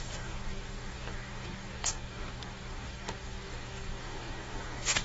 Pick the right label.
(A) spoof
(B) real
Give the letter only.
A